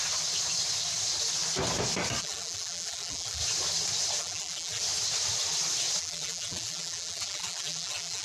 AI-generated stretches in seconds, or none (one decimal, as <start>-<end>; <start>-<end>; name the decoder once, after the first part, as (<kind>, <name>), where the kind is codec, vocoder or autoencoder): 2.2-3.4 (vocoder, BigVGAN v2); 4.2-4.8; 6.0-8.2